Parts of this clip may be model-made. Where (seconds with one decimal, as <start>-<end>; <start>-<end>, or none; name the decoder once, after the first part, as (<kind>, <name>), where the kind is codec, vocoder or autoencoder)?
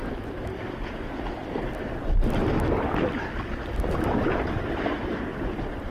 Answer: none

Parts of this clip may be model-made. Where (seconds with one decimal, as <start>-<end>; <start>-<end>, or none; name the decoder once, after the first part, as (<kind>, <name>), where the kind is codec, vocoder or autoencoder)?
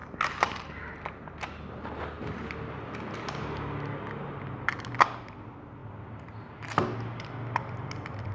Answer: 5.8-6.5 (vocoder, BigVGAN v2)